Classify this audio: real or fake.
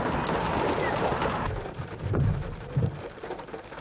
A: fake